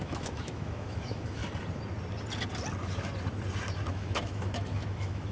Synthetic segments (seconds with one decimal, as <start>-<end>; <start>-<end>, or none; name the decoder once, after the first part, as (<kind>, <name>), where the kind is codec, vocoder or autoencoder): 0.0-1.4 (autoencoder, DAC-VAE); 3.9-5.3